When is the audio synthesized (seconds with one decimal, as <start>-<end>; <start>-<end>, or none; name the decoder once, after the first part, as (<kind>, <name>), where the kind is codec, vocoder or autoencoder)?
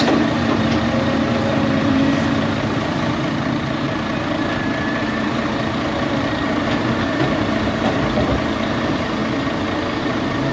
0.0-9.2 (vocoder, BigVGAN v2); 10.0-10.5